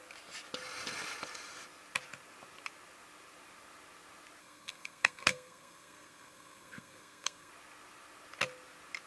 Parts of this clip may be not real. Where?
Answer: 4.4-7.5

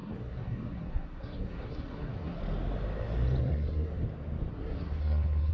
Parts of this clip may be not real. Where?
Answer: 0.0-2.4; 3.4-4.0; 4.5-5.5

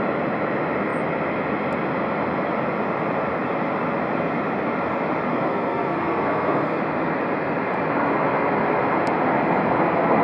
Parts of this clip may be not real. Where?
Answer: 5.3-6.8

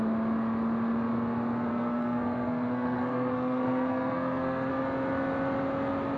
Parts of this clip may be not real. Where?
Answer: 1.7-4.7

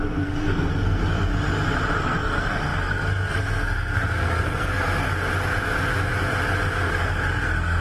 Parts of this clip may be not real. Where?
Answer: 0.0-1.3; 2.0-5.1; 6.9-7.8

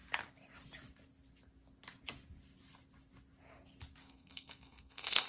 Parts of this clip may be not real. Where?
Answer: 4.0-5.3

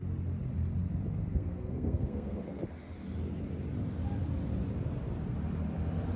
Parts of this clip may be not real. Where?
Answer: 1.3-2.6